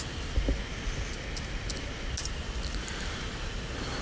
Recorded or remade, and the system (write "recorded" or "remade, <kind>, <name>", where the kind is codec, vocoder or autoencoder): recorded